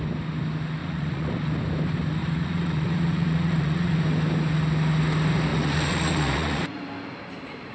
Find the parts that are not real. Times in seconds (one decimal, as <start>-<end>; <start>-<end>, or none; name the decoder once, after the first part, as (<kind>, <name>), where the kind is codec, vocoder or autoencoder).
0.8-1.6 (vocoder, Vocos); 2.2-4.0; 5.5-6.8